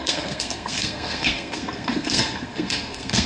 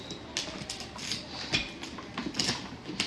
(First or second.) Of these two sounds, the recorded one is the second